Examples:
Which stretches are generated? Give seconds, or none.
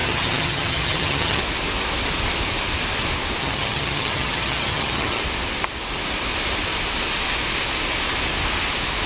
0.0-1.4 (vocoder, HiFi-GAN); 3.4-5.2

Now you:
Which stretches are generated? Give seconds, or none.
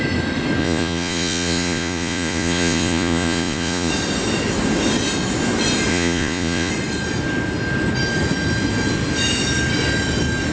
0.6-3.9 (vocoder, Vocos); 5.9-6.7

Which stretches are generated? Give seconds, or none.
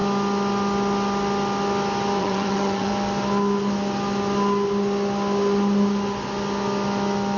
2.2-2.9 (vocoder, HiFi-GAN)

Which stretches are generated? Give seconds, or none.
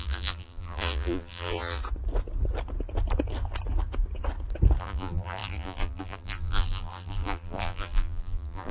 0.0-1.8 (vocoder, BigVGAN v2); 4.8-8.7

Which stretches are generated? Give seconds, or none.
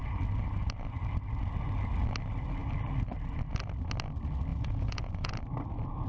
4.5-5.3 (vocoder, Vocos)